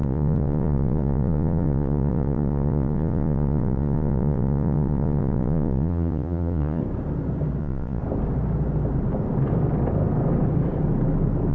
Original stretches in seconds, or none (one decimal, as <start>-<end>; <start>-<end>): 6.8-7.6; 8.0-11.5